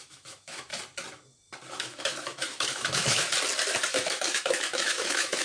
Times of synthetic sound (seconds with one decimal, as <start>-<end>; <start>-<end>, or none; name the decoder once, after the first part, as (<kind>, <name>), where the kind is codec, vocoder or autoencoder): 0.0-0.7 (autoencoder, DAC-VAE); 1.7-3.3; 3.9-5.4